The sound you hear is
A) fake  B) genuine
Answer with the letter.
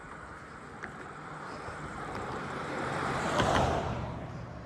A